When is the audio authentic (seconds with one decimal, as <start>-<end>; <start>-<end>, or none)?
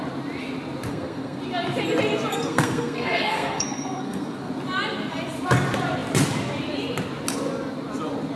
0.0-0.9; 1.4-2.3; 4.5-8.4